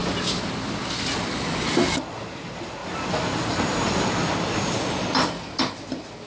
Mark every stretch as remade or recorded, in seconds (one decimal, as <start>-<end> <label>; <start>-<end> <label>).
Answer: 0.0-2.8 recorded; 2.8-4.8 remade; 4.8-6.3 recorded